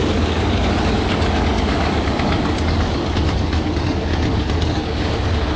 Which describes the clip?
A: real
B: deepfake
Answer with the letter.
B